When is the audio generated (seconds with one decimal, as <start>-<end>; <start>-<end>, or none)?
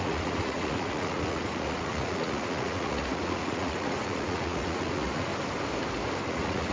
0.0-5.3; 6.3-6.7